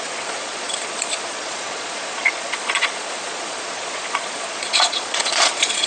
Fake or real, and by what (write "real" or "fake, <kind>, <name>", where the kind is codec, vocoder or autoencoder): fake, vocoder, Vocos